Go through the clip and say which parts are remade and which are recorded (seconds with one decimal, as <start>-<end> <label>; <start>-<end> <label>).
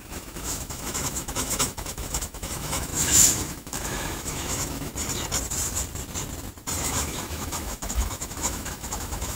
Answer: 0.0-4.9 remade; 4.9-6.8 recorded; 6.8-9.4 remade